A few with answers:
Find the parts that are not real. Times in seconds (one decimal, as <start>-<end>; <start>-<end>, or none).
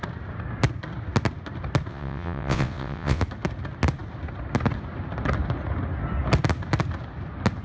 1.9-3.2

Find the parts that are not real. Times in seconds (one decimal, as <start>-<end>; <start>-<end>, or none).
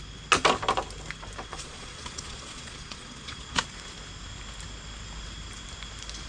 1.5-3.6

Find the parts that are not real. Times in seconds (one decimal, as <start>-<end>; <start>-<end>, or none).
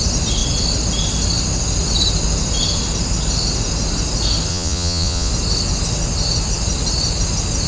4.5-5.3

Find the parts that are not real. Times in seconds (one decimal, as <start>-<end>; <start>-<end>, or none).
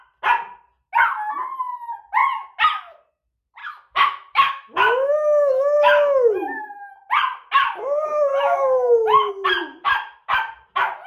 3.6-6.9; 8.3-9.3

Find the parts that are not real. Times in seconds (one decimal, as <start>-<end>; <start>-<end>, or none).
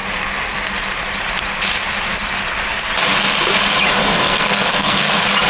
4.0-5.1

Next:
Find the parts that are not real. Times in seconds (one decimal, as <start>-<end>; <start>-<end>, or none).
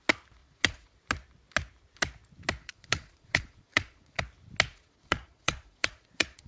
0.4-1.0; 2.6-4.2; 4.7-6.5